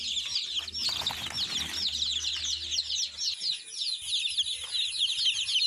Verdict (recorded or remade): recorded